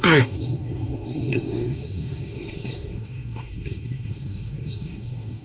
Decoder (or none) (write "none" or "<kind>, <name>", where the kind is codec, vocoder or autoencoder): codec, SNAC